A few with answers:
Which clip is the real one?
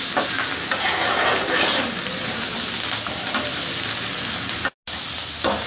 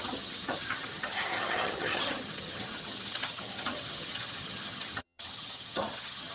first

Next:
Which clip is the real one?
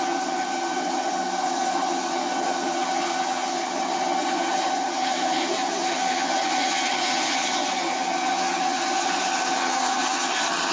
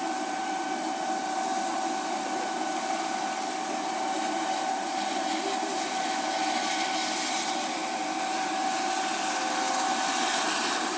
second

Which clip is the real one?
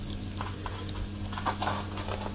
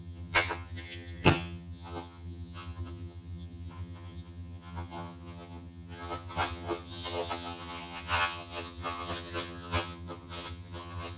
first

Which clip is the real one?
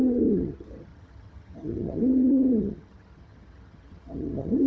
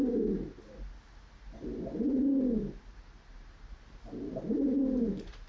second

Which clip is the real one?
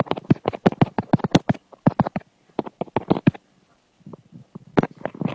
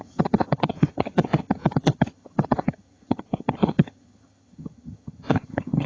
first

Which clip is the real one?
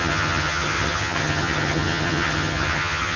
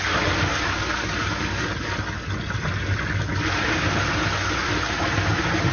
second